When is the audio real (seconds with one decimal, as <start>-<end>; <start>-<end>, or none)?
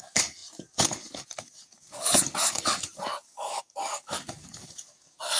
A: none